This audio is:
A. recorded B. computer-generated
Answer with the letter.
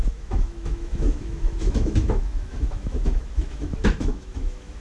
B